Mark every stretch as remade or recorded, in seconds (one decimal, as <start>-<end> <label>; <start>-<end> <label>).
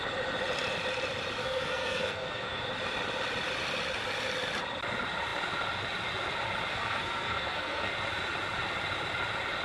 0.0-1.4 recorded; 1.4-2.6 remade; 2.6-6.7 recorded; 6.7-7.9 remade; 7.9-9.6 recorded